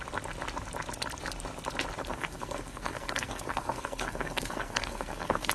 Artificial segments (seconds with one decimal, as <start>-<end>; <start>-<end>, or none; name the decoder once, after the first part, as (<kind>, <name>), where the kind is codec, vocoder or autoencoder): 2.0-5.5 (codec, SNAC)